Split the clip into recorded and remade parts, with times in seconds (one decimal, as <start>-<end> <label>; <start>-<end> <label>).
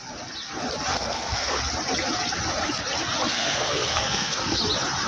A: 0.0-0.9 recorded; 0.9-1.6 remade; 1.6-3.3 recorded; 3.3-4.6 remade; 4.6-5.1 recorded